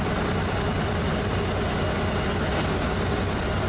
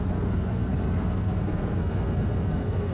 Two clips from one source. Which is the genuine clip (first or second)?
first